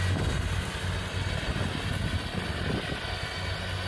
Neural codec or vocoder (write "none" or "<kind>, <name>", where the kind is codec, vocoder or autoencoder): none